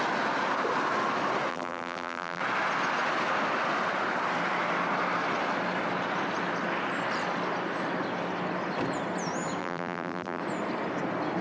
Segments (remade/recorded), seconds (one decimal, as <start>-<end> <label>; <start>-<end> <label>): 0.0-1.5 recorded; 1.5-2.4 remade; 2.4-9.6 recorded; 9.6-10.4 remade; 10.4-11.4 recorded

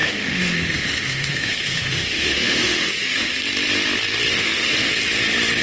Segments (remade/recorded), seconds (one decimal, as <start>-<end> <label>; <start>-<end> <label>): 0.0-3.4 remade; 3.4-4.3 recorded; 4.3-4.9 remade; 4.9-5.6 recorded

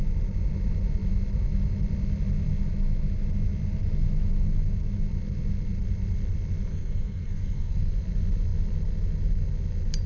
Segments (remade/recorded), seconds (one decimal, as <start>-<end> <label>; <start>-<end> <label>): 0.0-6.7 recorded; 6.7-7.9 remade; 7.9-10.1 recorded

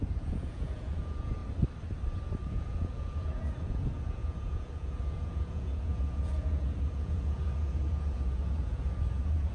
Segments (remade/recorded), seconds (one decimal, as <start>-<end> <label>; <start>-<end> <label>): 0.0-1.4 remade; 1.4-2.5 recorded; 2.5-9.5 remade

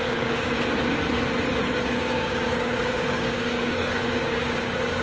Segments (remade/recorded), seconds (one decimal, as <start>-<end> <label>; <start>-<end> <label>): 0.0-0.5 remade; 0.5-1.8 recorded; 1.8-5.0 remade

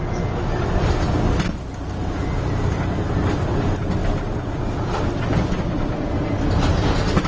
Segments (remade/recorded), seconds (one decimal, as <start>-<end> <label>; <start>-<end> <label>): 0.0-7.3 recorded

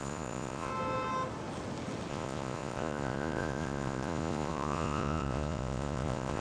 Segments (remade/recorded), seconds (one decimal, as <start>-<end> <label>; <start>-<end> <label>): 0.0-0.7 remade; 0.7-2.1 recorded; 2.1-6.4 remade

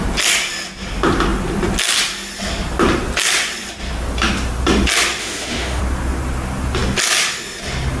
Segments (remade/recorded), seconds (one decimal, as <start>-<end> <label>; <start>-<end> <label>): 0.0-5.2 recorded; 5.2-5.8 remade; 5.8-8.0 recorded